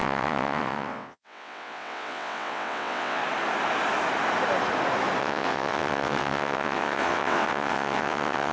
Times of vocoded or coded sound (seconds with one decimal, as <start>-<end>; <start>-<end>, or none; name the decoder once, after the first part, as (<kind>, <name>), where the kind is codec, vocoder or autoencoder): 0.0-3.2 (vocoder, WaveNeXt); 5.2-8.5